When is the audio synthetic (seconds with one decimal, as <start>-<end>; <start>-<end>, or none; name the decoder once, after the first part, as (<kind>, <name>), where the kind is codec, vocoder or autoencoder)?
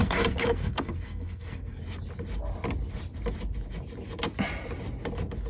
0.0-1.8 (codec, SNAC)